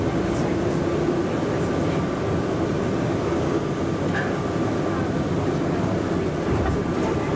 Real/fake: real